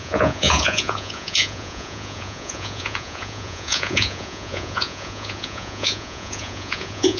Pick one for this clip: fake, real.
fake